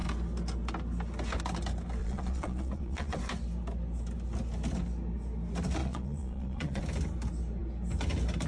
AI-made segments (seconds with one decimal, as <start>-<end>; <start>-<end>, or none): 2.0-3.2; 5.8-6.8